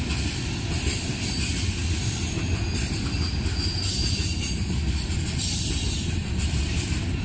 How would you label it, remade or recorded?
recorded